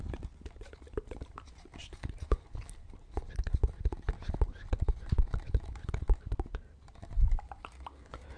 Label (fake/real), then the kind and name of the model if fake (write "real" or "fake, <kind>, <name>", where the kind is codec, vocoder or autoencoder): fake, vocoder, BigVGAN v2